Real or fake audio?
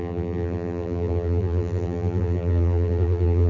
fake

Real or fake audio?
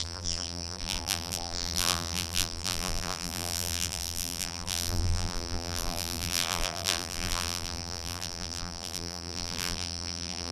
fake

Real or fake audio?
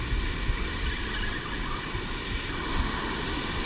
real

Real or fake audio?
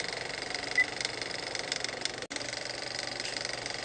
real